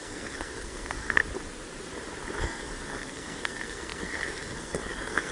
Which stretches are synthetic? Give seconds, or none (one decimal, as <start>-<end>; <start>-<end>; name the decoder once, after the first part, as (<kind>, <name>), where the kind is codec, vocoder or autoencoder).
0.0-1.2 (codec, SNAC); 2.4-5.3